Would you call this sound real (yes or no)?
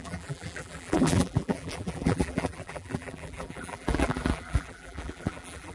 no